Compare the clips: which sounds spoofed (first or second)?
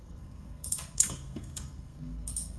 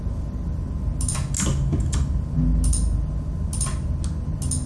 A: first